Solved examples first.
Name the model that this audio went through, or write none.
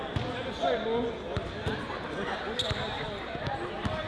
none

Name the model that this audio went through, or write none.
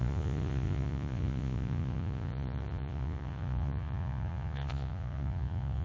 vocoder, Vocos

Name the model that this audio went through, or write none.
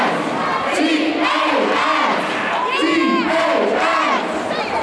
none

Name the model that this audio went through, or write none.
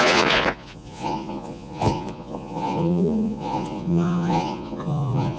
vocoder, Vocos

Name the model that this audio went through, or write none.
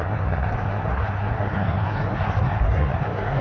codec, SNAC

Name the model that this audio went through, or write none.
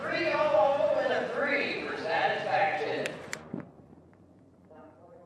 vocoder, Vocos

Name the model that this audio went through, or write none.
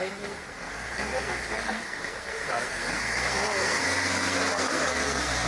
codec, SNAC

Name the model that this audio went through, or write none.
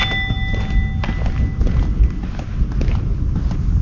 none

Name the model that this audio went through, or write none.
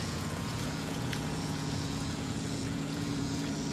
vocoder, Vocos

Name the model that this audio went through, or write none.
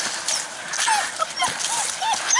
none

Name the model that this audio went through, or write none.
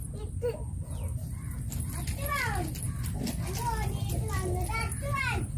none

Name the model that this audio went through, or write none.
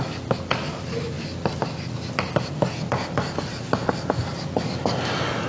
none